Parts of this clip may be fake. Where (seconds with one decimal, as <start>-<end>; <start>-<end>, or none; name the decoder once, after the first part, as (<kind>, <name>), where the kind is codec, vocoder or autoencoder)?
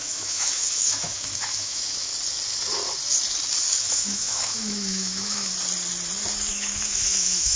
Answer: 0.0-2.1 (autoencoder, DAC-VAE); 3.8-5.5; 6.5-7.6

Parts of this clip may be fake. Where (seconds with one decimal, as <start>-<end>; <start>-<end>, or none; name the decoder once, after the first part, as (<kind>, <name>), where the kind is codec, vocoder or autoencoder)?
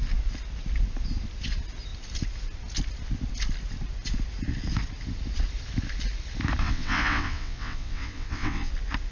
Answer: 6.6-8.7 (vocoder, WaveNeXt)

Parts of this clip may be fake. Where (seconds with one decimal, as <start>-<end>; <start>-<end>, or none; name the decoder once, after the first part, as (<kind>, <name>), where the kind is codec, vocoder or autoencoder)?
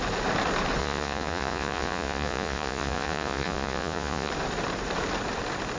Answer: 0.8-4.3 (vocoder, Vocos)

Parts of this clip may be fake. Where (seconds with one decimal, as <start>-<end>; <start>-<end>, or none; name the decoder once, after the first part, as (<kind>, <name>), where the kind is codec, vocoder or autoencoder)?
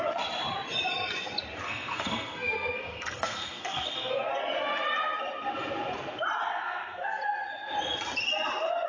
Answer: 1.6-4.3 (codec, SNAC); 6.5-7.2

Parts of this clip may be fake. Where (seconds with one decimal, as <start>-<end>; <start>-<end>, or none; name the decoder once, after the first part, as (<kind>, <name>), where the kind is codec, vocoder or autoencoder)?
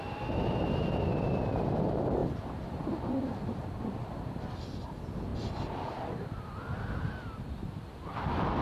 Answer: none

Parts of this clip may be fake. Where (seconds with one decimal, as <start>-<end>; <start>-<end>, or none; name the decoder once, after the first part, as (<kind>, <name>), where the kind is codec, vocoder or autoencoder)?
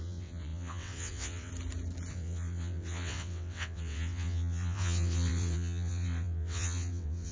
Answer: 0.0-1.5 (vocoder, WaveNeXt); 2.1-7.3